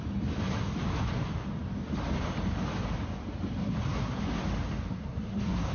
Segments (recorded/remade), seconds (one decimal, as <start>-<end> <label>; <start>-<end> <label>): 0.0-3.6 recorded; 3.6-4.2 remade; 4.2-4.9 recorded; 4.9-5.7 remade